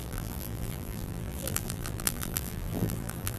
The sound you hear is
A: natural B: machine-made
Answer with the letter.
B